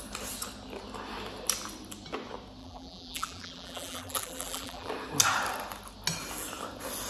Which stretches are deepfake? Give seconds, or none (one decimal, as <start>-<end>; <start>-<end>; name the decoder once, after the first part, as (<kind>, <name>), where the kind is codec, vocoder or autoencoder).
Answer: 2.6-4.9 (vocoder, BigVGAN v2)